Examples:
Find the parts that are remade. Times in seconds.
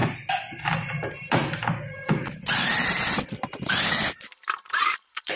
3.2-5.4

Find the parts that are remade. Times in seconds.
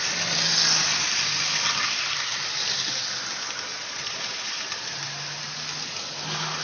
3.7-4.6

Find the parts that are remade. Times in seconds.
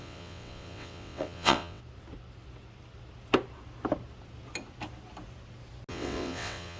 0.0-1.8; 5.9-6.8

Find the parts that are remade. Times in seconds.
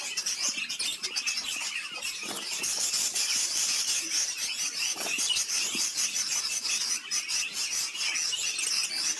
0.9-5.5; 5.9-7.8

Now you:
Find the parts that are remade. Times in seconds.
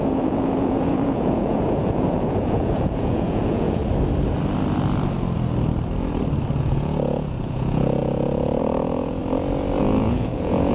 0.0-3.8; 6.6-9.2; 9.8-10.7